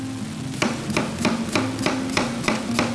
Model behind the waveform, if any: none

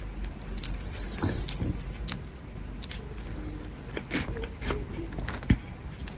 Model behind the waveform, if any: none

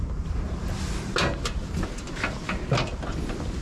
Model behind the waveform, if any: none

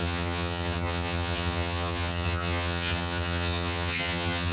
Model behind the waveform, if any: vocoder, HiFi-GAN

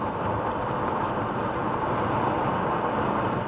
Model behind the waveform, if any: none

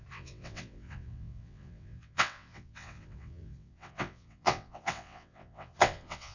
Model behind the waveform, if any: vocoder, WaveNeXt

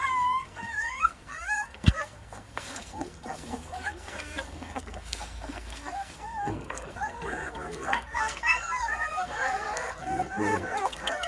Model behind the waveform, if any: codec, SNAC